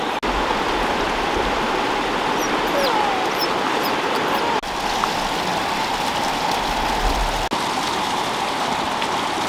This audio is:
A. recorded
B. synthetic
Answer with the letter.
A